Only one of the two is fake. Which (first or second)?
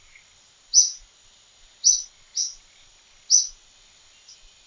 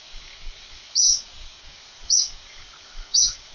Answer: second